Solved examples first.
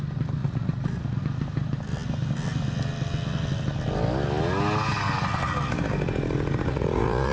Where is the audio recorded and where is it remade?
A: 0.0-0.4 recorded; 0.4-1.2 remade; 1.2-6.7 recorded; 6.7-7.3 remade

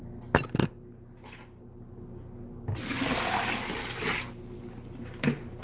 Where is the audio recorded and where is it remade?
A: 0.0-5.6 recorded

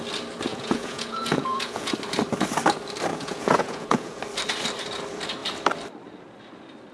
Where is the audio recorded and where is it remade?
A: 0.0-0.5 recorded; 0.5-1.9 remade; 1.9-3.1 recorded; 3.1-4.2 remade; 4.2-6.9 recorded

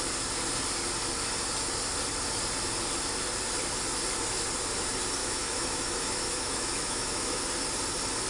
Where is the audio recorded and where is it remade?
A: 0.0-5.2 recorded; 5.2-7.4 remade; 7.4-8.3 recorded

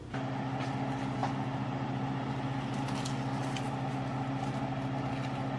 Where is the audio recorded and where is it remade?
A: 0.0-5.6 recorded

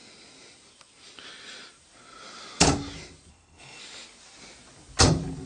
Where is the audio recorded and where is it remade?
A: 0.0-3.3 recorded; 3.3-3.8 remade; 3.8-5.5 recorded

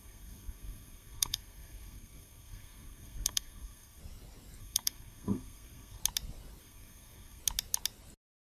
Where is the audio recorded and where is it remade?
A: 0.0-4.0 remade; 4.0-4.6 recorded; 4.6-6.0 remade; 6.0-6.6 recorded; 6.6-7.4 remade; 7.4-8.4 recorded